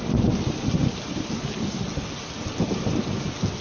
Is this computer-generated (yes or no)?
no